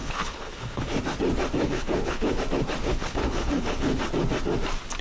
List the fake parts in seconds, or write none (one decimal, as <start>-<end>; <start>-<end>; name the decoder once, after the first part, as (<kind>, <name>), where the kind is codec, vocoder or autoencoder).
0.0-1.0 (codec, HILCodec); 1.6-2.4; 2.8-4.0